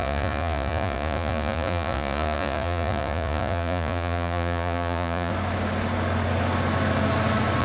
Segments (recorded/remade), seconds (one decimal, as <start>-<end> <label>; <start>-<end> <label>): 0.0-5.3 remade; 5.3-7.6 recorded